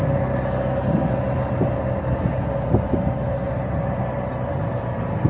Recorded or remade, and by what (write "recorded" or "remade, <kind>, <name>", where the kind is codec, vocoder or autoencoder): recorded